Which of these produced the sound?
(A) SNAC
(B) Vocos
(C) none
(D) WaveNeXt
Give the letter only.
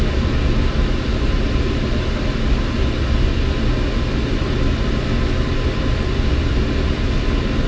C